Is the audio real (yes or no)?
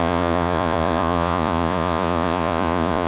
no